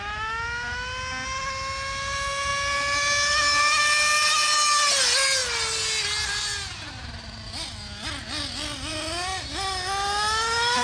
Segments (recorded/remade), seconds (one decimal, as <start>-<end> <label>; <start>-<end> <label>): 0.0-10.8 recorded

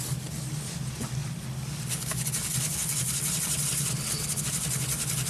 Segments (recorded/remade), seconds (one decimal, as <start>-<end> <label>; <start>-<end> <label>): 0.0-5.3 recorded

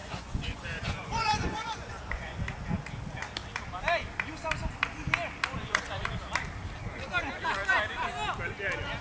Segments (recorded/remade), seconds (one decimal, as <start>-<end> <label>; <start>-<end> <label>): 0.0-2.4 remade; 2.4-5.6 recorded; 5.6-6.2 remade; 6.2-9.0 recorded

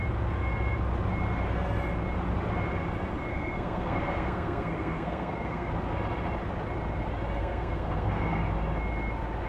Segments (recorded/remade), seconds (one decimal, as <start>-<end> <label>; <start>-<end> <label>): 0.0-3.3 recorded; 3.3-5.7 remade; 5.7-7.4 recorded; 7.4-8.4 remade; 8.4-9.5 recorded

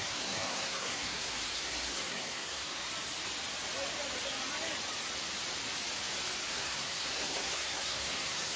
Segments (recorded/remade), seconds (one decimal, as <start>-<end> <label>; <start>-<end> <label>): 0.0-2.8 remade; 2.8-6.5 recorded; 6.5-8.6 remade

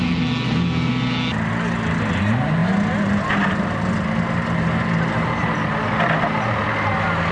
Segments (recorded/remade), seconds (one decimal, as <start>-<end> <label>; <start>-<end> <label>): 0.0-7.3 recorded